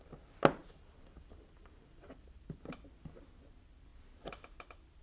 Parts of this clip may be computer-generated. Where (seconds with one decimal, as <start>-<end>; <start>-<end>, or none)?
0.6-2.6